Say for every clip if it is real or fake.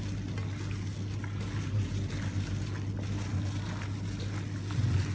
real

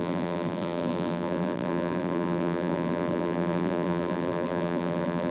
fake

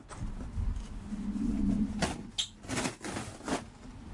real